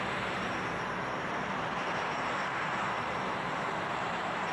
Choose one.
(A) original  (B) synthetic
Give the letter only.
B